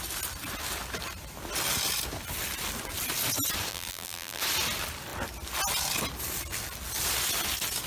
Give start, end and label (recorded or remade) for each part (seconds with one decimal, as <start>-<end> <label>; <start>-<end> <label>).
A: 0.0-3.7 recorded; 3.7-4.4 remade; 4.4-7.9 recorded